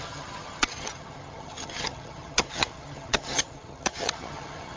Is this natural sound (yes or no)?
no